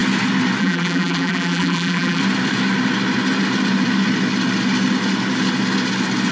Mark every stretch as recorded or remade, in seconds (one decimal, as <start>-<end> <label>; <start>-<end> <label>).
0.0-0.6 recorded; 0.6-2.2 remade; 2.2-6.3 recorded